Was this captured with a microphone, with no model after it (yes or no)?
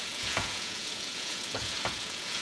no